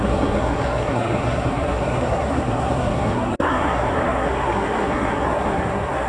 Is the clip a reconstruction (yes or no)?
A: yes